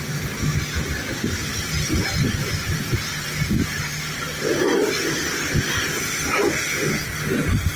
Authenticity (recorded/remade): recorded